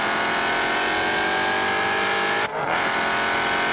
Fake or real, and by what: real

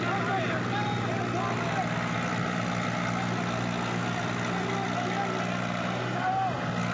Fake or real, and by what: real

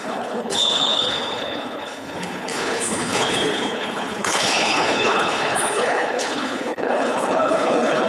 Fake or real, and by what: fake, codec, HILCodec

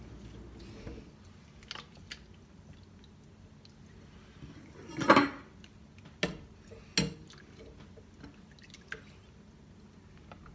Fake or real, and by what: real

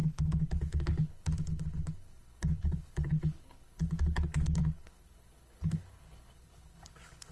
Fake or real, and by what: fake, codec, HILCodec